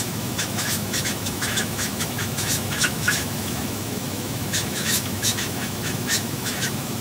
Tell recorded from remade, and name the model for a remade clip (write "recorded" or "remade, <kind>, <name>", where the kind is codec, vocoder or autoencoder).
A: remade, autoencoder, DAC-VAE